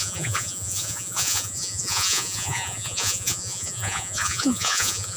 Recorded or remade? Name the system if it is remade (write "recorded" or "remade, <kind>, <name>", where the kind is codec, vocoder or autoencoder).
remade, vocoder, Vocos